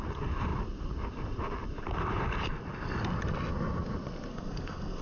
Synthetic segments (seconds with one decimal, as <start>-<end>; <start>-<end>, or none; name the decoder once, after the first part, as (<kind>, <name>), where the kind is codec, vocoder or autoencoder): 4.3-5.0 (codec, SNAC)